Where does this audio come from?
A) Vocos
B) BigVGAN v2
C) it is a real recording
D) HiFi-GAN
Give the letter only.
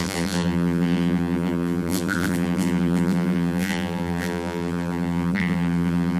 B